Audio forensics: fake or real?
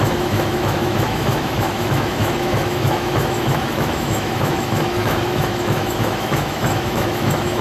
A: fake